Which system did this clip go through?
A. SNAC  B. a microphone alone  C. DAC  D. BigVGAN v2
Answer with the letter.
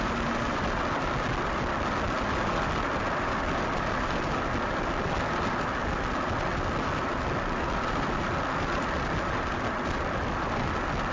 B